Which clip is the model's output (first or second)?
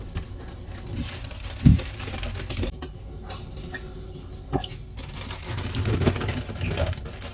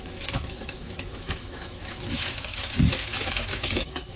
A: second